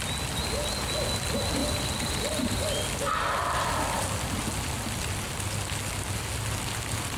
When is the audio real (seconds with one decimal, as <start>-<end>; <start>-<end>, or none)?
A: 0.0-1.6; 4.0-7.2